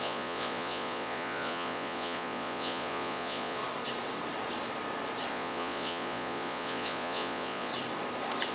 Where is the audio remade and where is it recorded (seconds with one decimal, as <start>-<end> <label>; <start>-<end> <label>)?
0.0-3.6 remade; 3.6-5.3 recorded; 5.3-7.7 remade; 7.7-8.5 recorded